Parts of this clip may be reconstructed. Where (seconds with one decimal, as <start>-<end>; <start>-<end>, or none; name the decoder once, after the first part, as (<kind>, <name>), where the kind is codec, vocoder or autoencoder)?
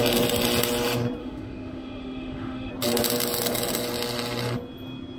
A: 1.2-2.7 (autoencoder, DAC-VAE)